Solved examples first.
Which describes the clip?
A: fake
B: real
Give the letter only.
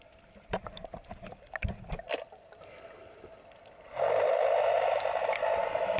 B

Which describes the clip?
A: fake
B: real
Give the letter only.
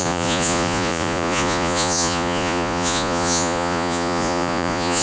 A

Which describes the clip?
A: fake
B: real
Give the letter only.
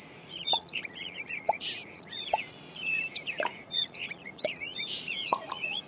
A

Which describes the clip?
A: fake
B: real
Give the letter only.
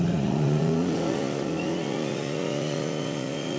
A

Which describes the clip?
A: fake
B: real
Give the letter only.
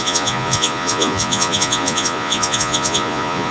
A